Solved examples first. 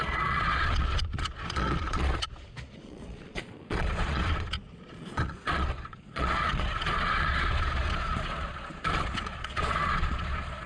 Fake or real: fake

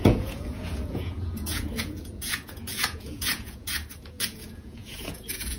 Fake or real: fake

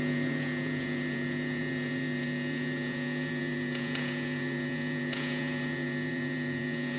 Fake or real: fake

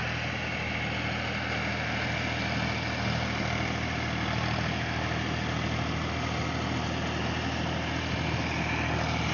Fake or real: real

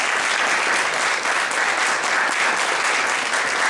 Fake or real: real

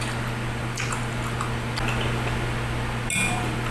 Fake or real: real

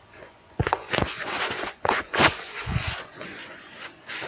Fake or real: fake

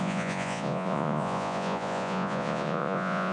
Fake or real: fake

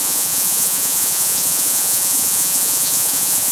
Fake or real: fake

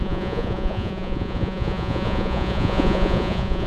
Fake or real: fake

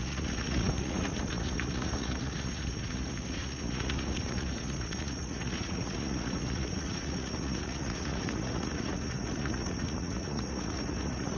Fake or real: fake